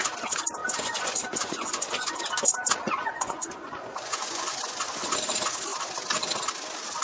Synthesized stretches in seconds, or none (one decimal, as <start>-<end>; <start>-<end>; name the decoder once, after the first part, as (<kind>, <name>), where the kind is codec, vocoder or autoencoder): 0.6-2.2 (vocoder, Vocos); 2.8-5.1

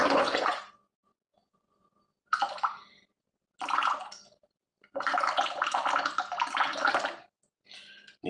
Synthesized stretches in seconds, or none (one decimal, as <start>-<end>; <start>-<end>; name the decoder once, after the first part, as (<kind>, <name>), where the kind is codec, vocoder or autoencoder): 0.0-2.0 (vocoder, Vocos)

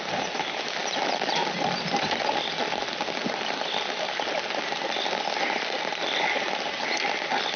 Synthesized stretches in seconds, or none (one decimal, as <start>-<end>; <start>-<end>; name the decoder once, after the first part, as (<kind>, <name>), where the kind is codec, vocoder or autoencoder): none